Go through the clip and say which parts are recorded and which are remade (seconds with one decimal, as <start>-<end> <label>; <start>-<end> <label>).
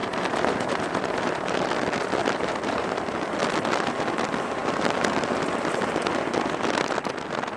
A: 0.0-1.7 remade; 1.7-2.2 recorded; 2.2-3.4 remade; 3.4-7.6 recorded